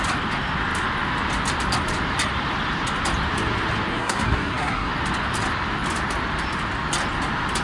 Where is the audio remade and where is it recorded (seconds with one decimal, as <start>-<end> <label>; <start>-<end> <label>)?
0.0-3.9 recorded; 3.9-4.9 remade; 4.9-7.6 recorded

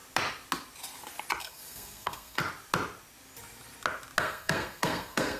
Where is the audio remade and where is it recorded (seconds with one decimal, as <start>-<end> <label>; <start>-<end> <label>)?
0.0-1.4 recorded; 1.4-2.4 remade; 2.4-4.2 recorded; 4.2-5.4 remade

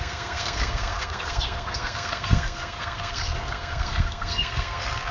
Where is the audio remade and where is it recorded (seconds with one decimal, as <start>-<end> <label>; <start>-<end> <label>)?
0.0-5.1 remade